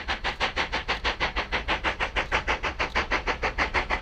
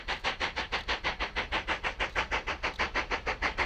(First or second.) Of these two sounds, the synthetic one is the second